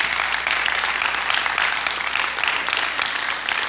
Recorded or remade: recorded